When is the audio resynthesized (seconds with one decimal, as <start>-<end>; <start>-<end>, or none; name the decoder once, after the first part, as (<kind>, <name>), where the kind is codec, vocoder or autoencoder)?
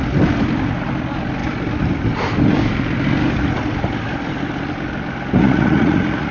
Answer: 5.4-6.3 (vocoder, Vocos)